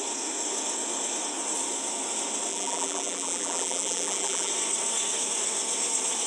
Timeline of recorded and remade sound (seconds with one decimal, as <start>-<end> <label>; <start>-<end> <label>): 0.0-2.5 recorded; 2.5-4.5 remade; 4.5-6.3 recorded